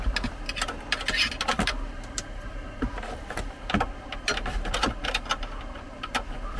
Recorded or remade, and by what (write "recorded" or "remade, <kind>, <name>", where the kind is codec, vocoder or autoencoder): recorded